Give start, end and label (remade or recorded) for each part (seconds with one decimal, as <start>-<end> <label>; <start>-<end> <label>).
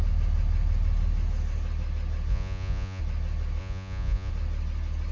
0.0-2.3 recorded; 2.3-3.0 remade; 3.0-3.6 recorded; 3.6-4.3 remade; 4.3-5.1 recorded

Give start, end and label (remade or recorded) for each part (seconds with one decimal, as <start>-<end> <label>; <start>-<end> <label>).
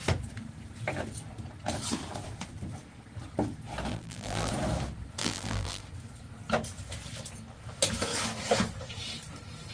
0.0-3.9 recorded; 3.9-4.5 remade; 4.5-5.2 recorded; 5.2-5.8 remade; 5.8-9.7 recorded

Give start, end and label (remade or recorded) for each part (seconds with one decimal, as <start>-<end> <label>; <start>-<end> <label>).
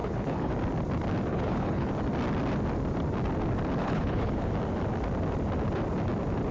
0.0-0.5 remade; 0.5-1.3 recorded; 1.3-1.9 remade; 1.9-3.8 recorded; 3.8-4.5 remade; 4.5-6.5 recorded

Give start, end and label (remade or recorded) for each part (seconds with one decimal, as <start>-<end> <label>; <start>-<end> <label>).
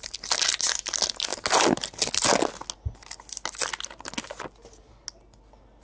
0.0-5.8 recorded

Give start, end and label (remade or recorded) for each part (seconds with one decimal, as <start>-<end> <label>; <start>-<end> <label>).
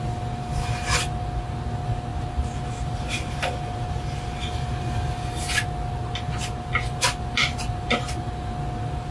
0.0-9.1 recorded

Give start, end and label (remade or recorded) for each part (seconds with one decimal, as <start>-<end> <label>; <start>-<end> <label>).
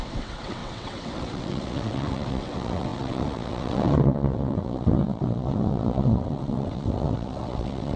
0.0-8.0 remade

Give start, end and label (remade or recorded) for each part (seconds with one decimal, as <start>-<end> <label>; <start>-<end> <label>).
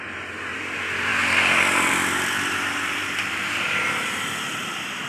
0.0-5.1 remade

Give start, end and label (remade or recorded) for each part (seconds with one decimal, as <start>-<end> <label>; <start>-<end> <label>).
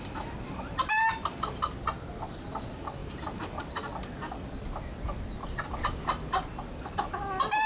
0.0-7.7 recorded